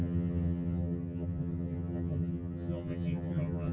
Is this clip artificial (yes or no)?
yes